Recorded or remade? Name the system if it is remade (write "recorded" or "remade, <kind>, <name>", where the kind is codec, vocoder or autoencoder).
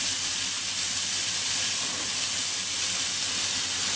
recorded